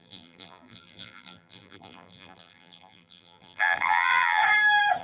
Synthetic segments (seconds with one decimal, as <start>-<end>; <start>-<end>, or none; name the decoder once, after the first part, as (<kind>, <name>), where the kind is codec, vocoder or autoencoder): 0.0-4.4 (vocoder, BigVGAN v2)